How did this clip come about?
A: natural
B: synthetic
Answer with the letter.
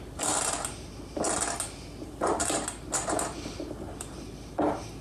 A